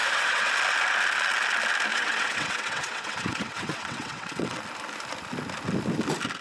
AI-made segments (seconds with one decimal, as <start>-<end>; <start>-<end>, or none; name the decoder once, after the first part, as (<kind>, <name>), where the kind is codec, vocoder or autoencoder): 0.0-0.5 (vocoder, WaveNeXt); 1.9-4.6